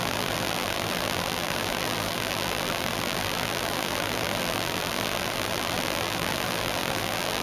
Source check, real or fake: fake